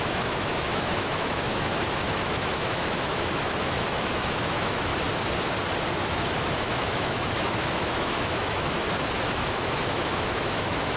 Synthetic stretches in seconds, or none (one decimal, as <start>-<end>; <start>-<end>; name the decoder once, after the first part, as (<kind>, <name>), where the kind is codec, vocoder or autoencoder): 0.0-4.9 (autoencoder, DAC-VAE); 5.9-11.0